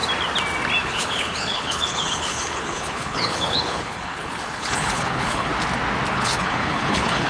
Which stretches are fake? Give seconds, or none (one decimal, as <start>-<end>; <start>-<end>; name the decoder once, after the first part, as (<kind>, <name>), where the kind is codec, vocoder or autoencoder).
0.8-5.5 (codec, HILCodec); 6.1-7.3